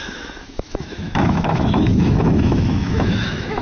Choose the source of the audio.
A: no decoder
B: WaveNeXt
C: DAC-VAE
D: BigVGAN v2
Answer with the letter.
C